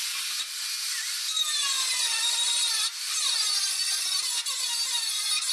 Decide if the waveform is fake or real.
real